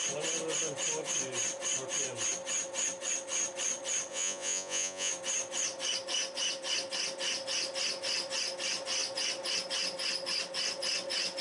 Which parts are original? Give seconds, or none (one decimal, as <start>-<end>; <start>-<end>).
0.0-4.1; 5.1-11.4